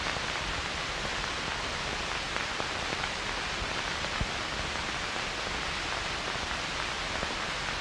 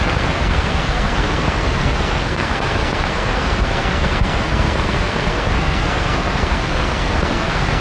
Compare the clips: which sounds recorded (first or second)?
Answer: first